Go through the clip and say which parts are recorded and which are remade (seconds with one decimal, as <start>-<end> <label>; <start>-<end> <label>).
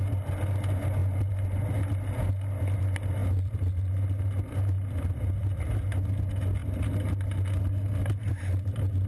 0.0-9.1 recorded